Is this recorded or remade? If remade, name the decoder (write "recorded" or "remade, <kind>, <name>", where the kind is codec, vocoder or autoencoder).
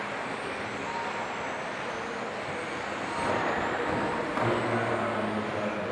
recorded